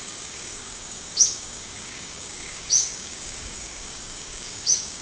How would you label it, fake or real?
fake